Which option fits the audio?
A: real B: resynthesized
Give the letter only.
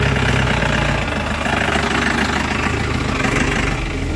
A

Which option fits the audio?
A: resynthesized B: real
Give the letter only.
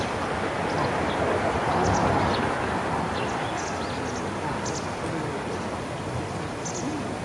B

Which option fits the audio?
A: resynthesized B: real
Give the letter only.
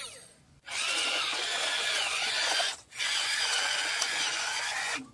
A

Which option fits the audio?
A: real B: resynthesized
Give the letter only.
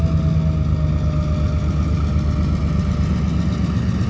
A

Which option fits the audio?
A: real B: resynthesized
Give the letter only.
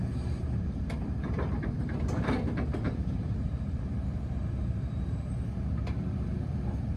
B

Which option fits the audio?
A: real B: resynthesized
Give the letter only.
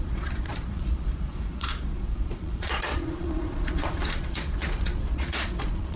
B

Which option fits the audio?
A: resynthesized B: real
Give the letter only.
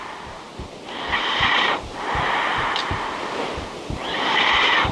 A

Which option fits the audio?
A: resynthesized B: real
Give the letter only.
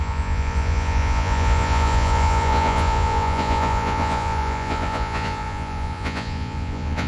A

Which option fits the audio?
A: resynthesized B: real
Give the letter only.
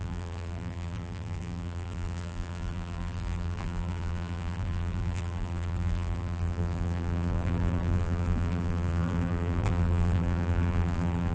A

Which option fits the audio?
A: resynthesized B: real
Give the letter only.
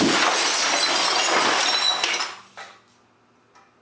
B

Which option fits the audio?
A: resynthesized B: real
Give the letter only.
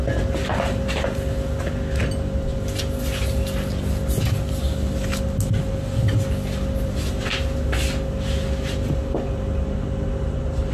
B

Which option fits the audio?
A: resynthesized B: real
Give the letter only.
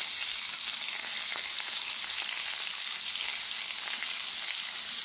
B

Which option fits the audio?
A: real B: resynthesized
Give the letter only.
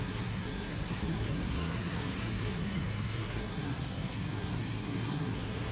B